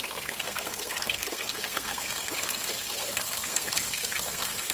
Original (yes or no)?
no